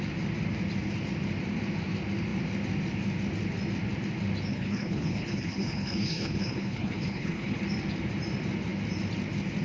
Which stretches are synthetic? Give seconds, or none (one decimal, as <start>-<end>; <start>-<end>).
4.5-7.6